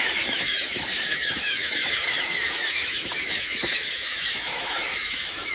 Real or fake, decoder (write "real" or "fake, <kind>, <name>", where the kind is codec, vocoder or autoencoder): fake, autoencoder, DAC-VAE